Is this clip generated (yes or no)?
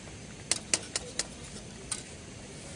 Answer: no